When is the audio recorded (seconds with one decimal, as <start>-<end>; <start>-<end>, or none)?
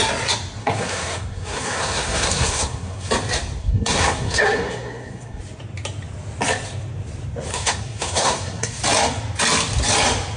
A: 0.0-0.6; 3.1-3.6; 5.4-7.5; 8.8-10.4